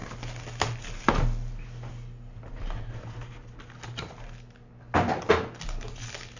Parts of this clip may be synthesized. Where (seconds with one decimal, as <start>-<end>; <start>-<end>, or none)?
none

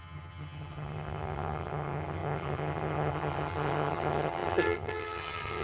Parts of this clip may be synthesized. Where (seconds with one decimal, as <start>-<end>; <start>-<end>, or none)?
0.0-5.6